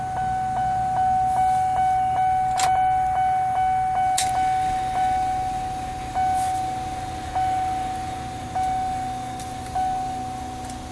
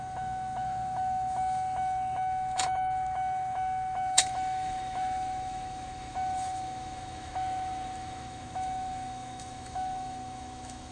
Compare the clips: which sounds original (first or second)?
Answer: first